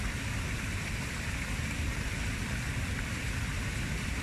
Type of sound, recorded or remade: remade